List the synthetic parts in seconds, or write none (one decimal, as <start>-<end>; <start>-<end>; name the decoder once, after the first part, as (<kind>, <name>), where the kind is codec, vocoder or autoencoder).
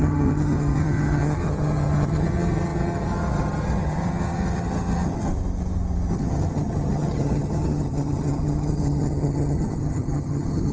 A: 0.0-5.3 (vocoder, HiFi-GAN); 6.1-10.7